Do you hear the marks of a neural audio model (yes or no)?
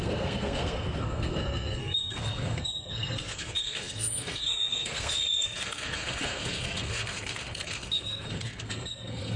yes